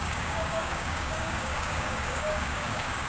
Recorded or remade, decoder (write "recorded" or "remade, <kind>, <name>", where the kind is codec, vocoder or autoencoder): remade, codec, DAC